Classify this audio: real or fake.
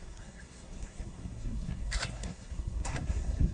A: fake